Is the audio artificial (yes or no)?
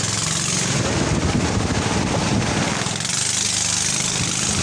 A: no